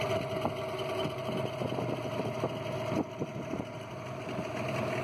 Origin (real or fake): real